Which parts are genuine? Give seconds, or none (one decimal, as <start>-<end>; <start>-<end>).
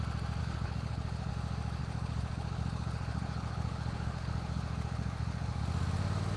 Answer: 0.0-0.4; 1.3-1.8; 5.6-6.4